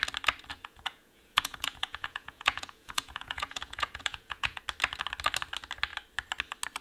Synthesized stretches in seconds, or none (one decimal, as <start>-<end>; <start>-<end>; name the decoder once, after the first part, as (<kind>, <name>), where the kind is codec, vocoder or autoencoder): 0.5-4.6 (vocoder, Vocos)